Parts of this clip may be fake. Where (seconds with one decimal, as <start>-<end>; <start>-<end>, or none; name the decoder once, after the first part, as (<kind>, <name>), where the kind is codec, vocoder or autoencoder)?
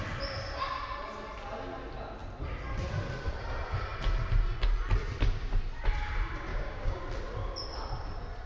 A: 6.5-7.0 (codec, DAC)